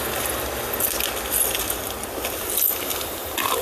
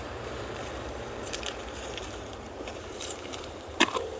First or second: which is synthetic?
second